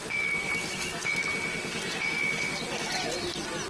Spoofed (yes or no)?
no